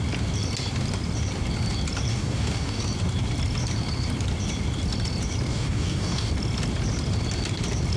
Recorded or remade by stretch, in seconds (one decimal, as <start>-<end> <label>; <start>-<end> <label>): 0.0-2.1 recorded; 2.1-2.8 remade; 2.8-5.5 recorded; 5.5-6.3 remade; 6.3-8.0 recorded